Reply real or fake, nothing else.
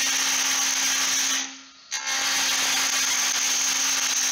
real